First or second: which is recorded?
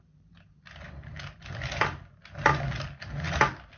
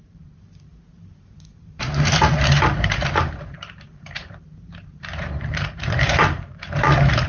first